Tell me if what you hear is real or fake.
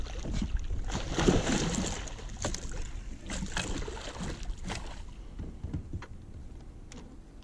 real